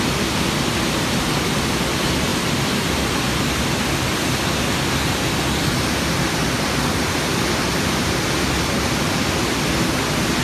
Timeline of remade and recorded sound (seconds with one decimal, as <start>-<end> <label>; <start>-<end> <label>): 0.0-10.4 recorded